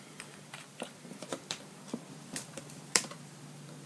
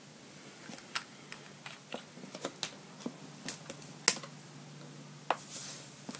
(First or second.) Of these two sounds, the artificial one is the first